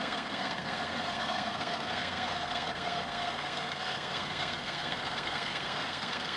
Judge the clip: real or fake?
fake